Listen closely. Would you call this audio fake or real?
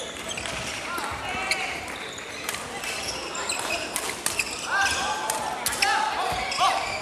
real